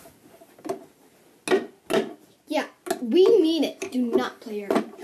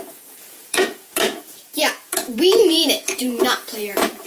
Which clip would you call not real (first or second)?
second